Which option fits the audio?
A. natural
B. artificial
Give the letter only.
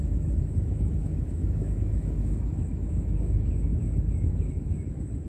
B